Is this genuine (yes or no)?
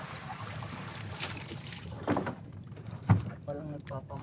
no